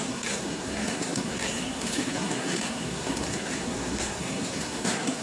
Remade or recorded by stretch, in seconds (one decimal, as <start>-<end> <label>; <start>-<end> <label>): 0.0-5.2 remade